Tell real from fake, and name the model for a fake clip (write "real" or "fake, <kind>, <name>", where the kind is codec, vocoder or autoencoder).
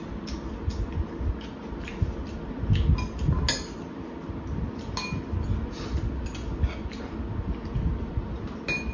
real